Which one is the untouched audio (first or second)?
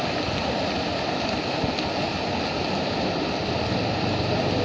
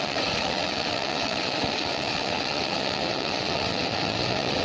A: first